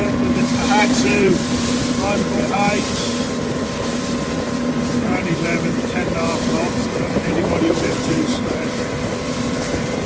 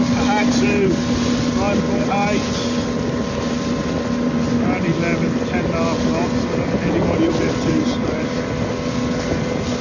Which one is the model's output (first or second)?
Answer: first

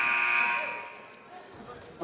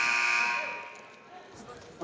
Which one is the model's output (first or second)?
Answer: second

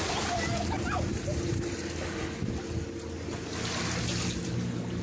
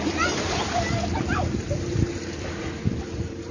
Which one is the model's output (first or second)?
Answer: second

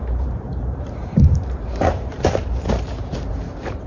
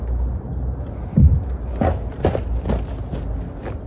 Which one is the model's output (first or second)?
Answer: first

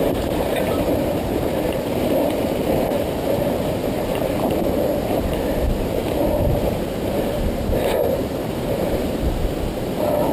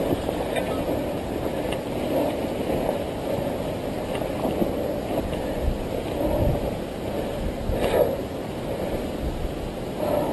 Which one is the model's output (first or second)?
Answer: first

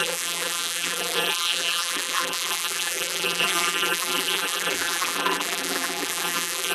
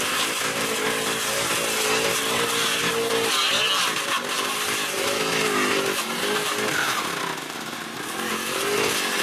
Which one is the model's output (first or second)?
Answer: first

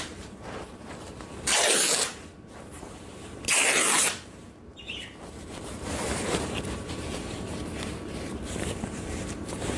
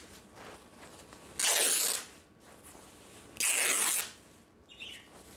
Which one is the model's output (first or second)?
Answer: first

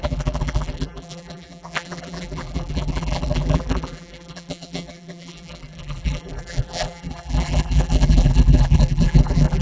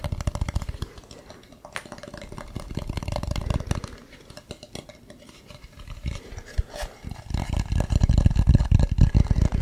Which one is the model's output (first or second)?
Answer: first